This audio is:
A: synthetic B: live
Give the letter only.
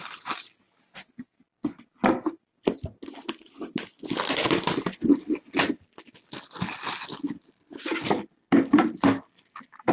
B